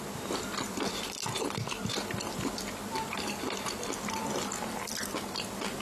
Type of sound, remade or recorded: recorded